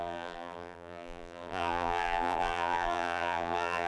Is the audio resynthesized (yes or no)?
yes